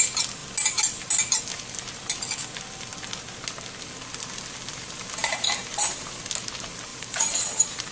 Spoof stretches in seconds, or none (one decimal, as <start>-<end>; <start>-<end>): 5.2-6.2; 6.9-7.9